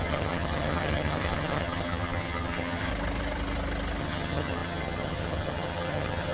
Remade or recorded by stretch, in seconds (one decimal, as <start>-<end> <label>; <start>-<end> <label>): 0.0-2.9 remade; 2.9-4.0 recorded; 4.0-6.3 remade